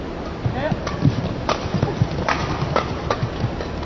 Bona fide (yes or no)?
yes